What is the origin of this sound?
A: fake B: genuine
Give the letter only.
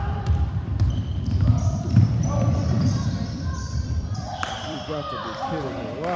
A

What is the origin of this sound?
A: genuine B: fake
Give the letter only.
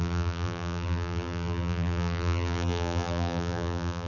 B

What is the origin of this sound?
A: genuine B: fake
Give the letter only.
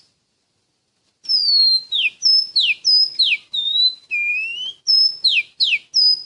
A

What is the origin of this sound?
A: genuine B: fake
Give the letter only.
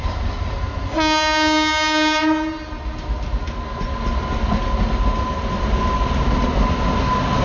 A